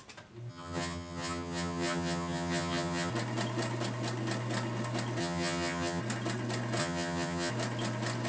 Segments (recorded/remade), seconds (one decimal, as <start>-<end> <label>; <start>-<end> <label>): 0.0-0.5 recorded; 0.5-3.1 remade; 3.1-5.2 recorded; 5.2-6.0 remade; 6.0-6.8 recorded; 6.8-7.5 remade; 7.5-8.3 recorded